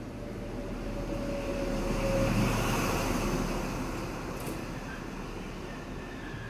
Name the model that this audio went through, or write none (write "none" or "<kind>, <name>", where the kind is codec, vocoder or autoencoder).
none